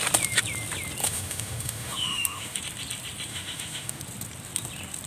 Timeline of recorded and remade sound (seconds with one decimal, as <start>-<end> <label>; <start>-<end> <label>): 0.0-1.0 recorded; 1.0-2.6 remade; 2.6-3.3 recorded; 3.3-4.0 remade; 4.0-5.1 recorded